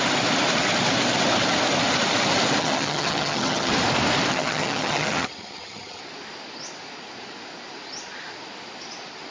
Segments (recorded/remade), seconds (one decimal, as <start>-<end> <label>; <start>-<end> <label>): 0.0-2.6 recorded; 2.6-3.7 remade; 3.7-4.3 recorded; 4.3-6.0 remade; 6.0-9.3 recorded

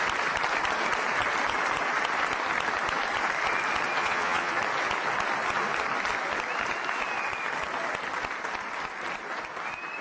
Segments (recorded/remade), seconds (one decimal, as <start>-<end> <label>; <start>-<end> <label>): 0.0-4.0 recorded; 4.0-4.6 remade; 4.6-10.0 recorded

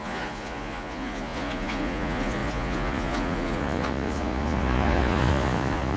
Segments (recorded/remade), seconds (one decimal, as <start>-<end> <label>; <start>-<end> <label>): 0.0-6.0 remade

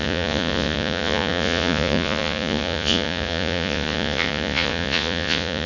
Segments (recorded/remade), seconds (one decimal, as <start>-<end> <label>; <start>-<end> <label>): 0.0-5.7 remade

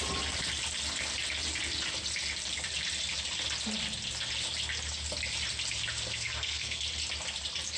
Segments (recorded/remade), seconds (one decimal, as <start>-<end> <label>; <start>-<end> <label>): 0.0-6.1 recorded; 6.1-6.8 remade; 6.8-7.8 recorded

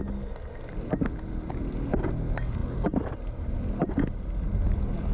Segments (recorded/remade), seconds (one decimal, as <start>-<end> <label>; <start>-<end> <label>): 0.0-5.1 recorded